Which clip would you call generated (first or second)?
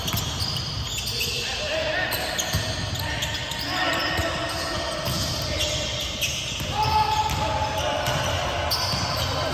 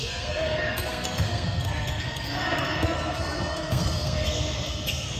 second